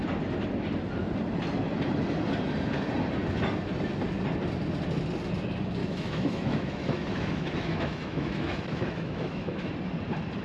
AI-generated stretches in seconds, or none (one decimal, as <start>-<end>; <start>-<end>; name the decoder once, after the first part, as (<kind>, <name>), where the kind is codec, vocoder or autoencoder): 5.8-9.7 (autoencoder, DAC-VAE)

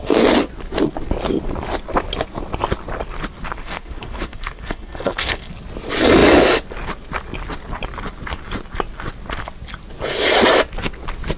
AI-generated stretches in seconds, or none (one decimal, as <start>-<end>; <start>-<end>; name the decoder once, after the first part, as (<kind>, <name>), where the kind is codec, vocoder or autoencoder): 3.6-5.5 (codec, SNAC)

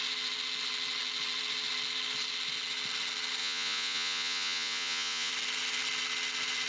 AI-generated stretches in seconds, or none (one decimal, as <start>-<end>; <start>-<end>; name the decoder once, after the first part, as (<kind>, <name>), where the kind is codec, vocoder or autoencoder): 3.4-5.3 (vocoder, Vocos)